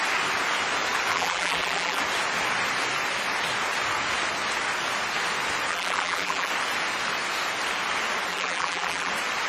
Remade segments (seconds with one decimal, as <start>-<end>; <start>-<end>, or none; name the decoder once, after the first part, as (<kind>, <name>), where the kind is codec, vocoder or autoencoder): 1.1-2.0 (vocoder, BigVGAN v2); 5.7-6.5; 8.3-9.1